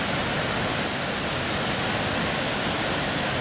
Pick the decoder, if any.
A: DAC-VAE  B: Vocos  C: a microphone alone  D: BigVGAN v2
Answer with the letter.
C